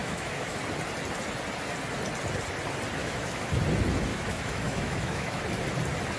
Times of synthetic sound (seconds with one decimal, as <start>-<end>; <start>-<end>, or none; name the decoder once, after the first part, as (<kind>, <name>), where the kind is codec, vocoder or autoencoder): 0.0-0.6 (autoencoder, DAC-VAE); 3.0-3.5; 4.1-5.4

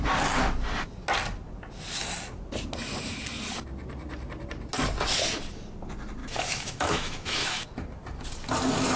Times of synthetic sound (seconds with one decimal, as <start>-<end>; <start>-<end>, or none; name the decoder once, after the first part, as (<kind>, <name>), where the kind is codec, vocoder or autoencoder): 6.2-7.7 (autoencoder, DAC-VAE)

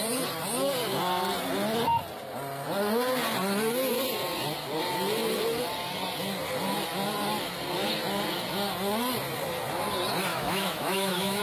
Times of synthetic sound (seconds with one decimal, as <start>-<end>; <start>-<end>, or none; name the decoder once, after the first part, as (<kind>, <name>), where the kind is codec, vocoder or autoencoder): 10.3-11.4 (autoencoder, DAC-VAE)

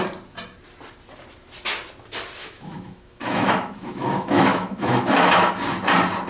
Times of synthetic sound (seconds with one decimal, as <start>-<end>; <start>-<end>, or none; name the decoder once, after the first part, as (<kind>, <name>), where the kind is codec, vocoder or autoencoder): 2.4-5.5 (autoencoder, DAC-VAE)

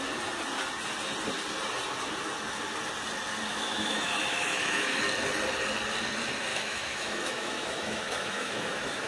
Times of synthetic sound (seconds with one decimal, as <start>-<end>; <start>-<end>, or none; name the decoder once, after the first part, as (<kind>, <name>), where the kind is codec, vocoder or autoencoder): 3.5-5.0 (autoencoder, DAC-VAE); 6.5-9.1

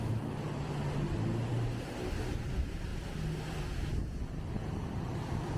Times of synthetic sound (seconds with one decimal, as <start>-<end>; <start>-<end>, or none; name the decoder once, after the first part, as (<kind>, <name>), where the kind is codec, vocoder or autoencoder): none